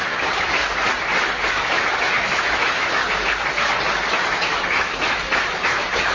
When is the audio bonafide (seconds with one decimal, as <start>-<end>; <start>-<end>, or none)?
0.6-1.5; 3.0-4.1